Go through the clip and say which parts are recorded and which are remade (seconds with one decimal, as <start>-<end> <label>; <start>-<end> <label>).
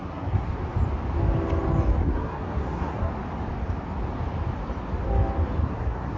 0.0-0.5 remade; 0.5-2.0 recorded; 2.0-3.1 remade; 3.1-5.6 recorded; 5.6-6.2 remade